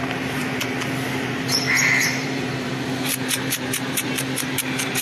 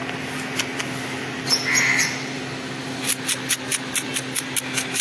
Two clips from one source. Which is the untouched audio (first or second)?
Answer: second